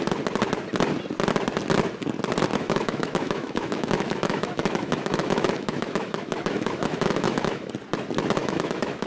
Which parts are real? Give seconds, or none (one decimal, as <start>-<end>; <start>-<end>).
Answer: 0.0-2.5; 7.7-8.4